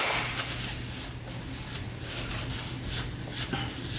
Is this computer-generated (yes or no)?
no